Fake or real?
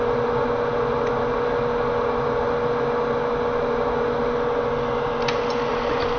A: real